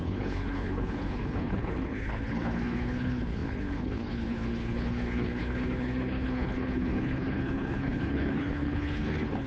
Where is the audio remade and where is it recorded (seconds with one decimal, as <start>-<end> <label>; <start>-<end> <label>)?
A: 0.0-9.5 remade